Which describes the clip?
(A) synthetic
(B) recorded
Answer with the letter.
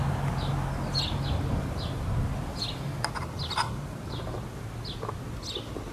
B